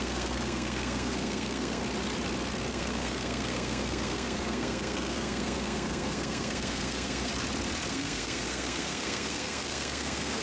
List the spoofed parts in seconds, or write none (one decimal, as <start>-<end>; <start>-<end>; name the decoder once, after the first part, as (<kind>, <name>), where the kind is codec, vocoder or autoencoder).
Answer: 0.0-1.8 (codec, SNAC); 2.7-7.3; 7.9-10.4